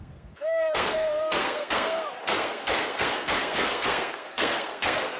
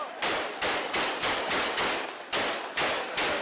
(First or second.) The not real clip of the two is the first